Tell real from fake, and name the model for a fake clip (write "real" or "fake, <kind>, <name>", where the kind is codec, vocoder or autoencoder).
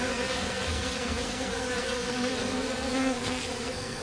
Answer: fake, codec, SNAC